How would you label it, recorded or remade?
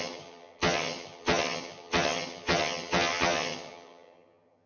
remade